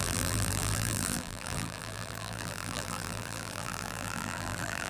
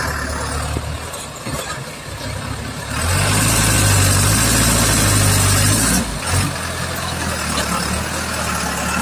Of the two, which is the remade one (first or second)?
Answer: first